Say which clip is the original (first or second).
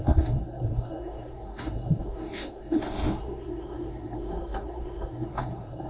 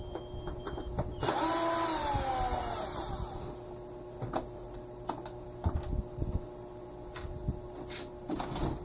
second